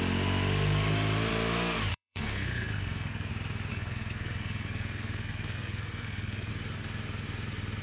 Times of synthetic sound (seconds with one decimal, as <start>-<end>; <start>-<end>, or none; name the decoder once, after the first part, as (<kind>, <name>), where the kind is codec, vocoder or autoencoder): 1.9-3.3 (codec, SNAC); 3.7-6.5